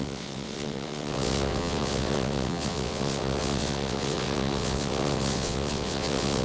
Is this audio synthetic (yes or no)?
yes